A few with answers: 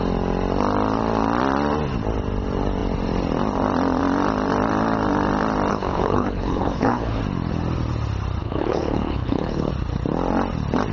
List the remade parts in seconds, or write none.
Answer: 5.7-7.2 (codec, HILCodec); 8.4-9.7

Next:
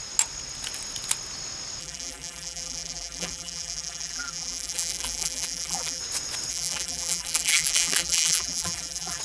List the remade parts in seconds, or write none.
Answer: 1.8-6.0 (vocoder, BigVGAN v2); 6.5-9.2

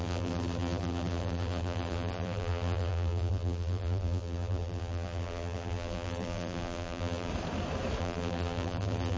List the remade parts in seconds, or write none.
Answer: 0.0-7.3 (vocoder, BigVGAN v2); 8.0-9.2